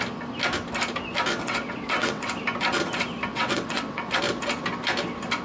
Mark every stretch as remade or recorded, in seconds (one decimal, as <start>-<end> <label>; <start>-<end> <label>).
0.0-1.4 recorded; 1.4-2.3 remade; 2.3-3.3 recorded; 3.3-4.2 remade; 4.2-5.4 recorded